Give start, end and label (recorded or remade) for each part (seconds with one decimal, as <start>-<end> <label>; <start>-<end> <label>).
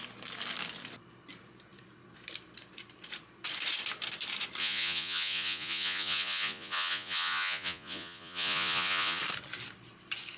0.0-4.6 recorded; 4.6-9.2 remade; 9.2-10.4 recorded